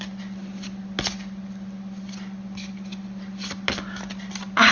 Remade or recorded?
recorded